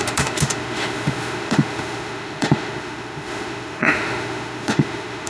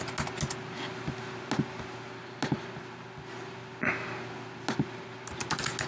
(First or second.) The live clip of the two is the second